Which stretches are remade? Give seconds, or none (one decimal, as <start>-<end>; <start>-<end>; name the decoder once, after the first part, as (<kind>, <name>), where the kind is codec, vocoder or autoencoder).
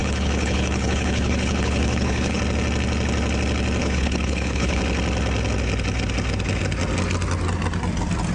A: 0.0-2.4 (codec, HILCodec); 3.8-4.8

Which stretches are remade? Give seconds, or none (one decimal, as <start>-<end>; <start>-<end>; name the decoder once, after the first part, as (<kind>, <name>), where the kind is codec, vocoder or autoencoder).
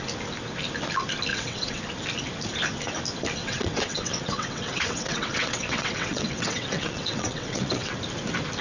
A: 1.3-1.8 (vocoder, WaveNeXt); 3.4-8.0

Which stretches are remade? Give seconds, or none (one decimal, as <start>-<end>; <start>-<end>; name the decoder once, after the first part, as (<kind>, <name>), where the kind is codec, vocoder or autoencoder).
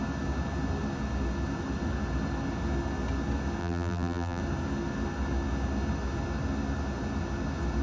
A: 3.6-4.4 (vocoder, BigVGAN v2)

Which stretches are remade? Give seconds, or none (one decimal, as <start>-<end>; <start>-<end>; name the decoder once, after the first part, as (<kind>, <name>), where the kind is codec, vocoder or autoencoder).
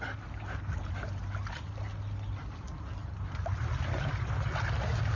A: none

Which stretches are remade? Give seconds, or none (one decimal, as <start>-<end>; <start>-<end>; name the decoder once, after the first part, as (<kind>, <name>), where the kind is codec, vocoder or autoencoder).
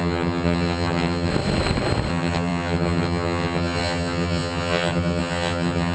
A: 0.0-1.3 (vocoder, HiFi-GAN); 2.1-5.9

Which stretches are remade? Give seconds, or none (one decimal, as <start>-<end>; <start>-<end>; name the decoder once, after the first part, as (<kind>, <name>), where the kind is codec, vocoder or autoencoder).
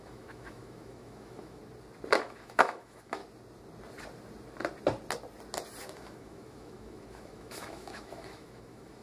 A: 0.0-1.6 (autoencoder, DAC-VAE); 2.2-3.2; 5.8-9.0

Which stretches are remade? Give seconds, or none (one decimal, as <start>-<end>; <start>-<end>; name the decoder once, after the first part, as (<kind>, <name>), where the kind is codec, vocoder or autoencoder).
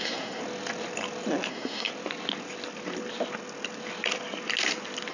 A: 0.0-0.4 (codec, SNAC); 1.5-1.9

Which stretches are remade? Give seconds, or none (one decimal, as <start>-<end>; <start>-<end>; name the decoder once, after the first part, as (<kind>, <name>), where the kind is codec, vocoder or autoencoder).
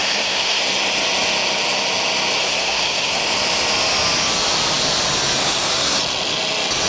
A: 0.0-0.6 (codec, SNAC); 2.4-3.2; 5.4-6.0